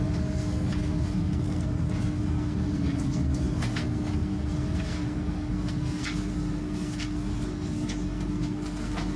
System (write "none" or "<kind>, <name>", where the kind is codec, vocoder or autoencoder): codec, SNAC